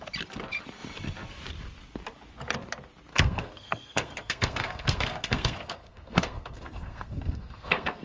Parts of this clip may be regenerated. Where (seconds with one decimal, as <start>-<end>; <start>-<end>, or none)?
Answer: 3.1-8.0